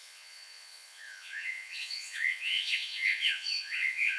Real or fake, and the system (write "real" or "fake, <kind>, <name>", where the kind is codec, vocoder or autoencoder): fake, vocoder, Vocos